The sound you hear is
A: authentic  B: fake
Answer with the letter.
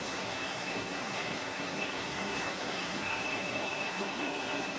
B